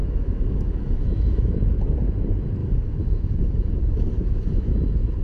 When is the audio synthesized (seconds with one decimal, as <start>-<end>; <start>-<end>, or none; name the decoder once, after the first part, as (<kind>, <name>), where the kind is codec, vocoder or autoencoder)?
0.0-1.5 (autoencoder, DAC-VAE); 2.6-4.7